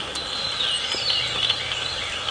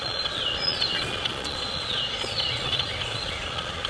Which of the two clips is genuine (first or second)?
first